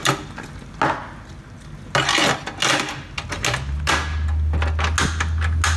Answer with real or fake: real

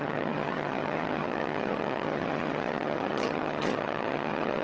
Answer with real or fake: fake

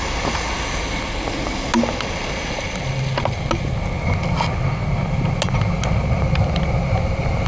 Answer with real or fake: real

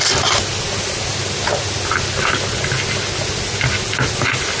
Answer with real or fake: real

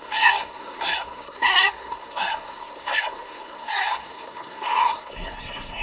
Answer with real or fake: fake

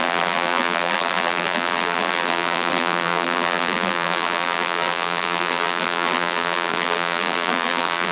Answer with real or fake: fake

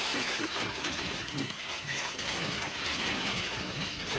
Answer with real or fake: fake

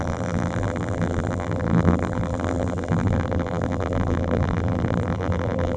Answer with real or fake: fake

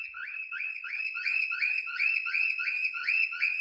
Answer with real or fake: fake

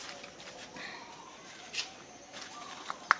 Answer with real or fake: real